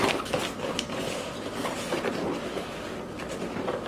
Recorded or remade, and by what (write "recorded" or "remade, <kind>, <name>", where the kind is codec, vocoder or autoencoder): recorded